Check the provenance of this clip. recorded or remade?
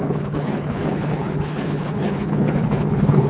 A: remade